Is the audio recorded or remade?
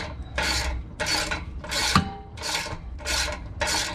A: remade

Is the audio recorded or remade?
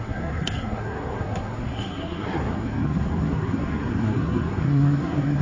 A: remade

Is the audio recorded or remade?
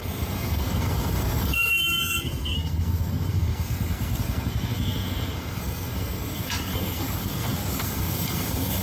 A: remade